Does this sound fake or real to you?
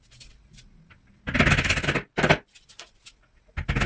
real